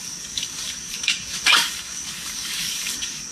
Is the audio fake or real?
fake